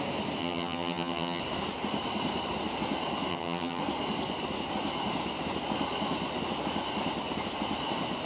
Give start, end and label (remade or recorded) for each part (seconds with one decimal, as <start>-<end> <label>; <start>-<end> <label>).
0.0-0.4 recorded; 0.4-1.4 remade; 1.4-3.3 recorded; 3.3-3.8 remade; 3.8-8.3 recorded